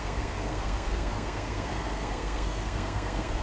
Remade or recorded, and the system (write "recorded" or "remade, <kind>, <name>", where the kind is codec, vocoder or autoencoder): remade, codec, SNAC